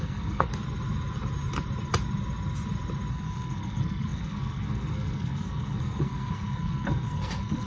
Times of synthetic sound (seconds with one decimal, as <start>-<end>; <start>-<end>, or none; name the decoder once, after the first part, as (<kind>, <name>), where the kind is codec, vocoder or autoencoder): 0.0-0.5 (codec, SNAC); 3.1-7.7